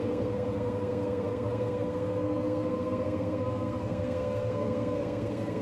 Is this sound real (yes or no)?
no